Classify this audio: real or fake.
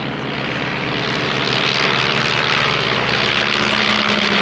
real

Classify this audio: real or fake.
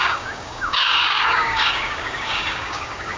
fake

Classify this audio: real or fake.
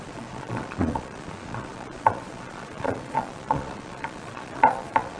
fake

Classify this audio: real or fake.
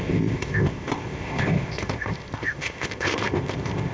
fake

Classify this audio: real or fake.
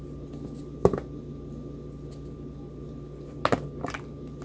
real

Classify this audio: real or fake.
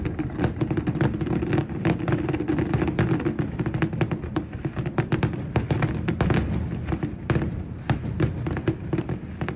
real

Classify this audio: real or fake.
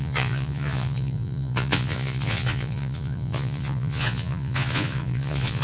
fake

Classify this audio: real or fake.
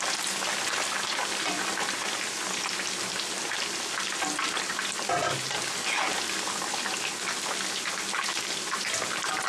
real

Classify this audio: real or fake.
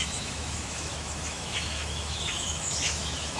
fake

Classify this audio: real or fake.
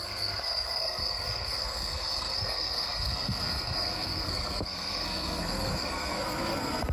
fake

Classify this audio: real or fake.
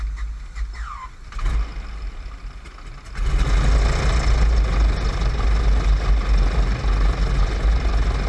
real